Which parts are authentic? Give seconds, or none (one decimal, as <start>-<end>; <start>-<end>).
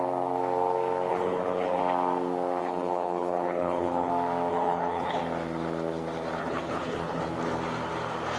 0.0-1.1; 1.8-2.6; 4.1-4.5; 5.2-6.4; 7.2-8.4